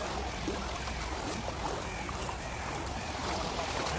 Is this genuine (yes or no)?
yes